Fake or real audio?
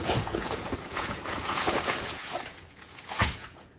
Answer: fake